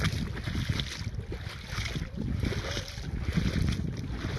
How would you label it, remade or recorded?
recorded